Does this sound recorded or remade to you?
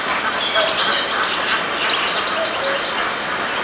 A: recorded